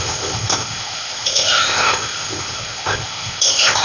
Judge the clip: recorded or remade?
remade